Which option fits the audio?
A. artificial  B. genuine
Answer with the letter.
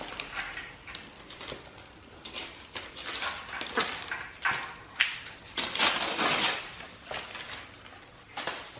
B